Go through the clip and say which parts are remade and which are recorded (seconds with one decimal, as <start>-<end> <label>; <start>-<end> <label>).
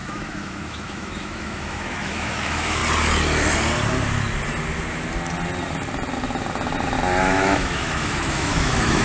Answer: 0.0-2.8 remade; 2.8-7.2 recorded; 7.2-9.0 remade